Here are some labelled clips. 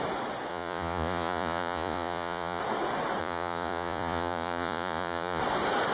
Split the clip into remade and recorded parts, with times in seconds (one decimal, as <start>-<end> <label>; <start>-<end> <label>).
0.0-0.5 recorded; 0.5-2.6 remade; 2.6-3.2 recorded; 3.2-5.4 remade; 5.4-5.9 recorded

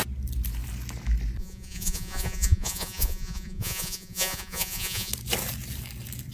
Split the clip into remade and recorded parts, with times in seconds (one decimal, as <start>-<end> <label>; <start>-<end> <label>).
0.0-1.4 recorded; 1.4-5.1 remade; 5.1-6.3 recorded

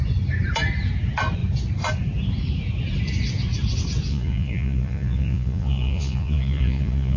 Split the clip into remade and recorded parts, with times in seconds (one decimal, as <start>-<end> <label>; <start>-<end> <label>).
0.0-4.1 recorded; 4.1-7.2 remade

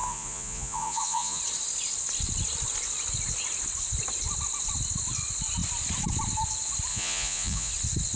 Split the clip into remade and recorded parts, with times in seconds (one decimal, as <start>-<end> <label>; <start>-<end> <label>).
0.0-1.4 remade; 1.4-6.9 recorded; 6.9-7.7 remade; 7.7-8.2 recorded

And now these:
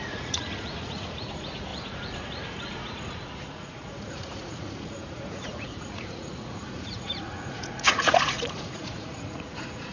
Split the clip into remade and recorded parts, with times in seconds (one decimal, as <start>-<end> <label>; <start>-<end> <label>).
0.0-9.9 remade

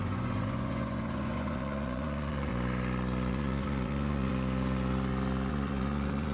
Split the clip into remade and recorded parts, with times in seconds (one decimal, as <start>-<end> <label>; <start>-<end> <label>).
0.0-2.5 remade; 2.5-3.3 recorded; 3.3-4.3 remade; 4.3-5.5 recorded; 5.5-6.3 remade

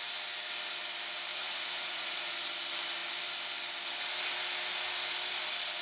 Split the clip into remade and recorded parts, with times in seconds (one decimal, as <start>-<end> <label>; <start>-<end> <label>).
0.0-1.3 recorded; 1.3-2.2 remade; 2.2-5.8 recorded

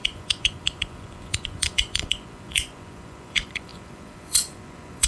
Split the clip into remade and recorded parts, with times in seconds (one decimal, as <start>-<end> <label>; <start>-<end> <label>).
0.0-5.1 remade